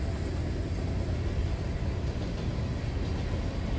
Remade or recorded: recorded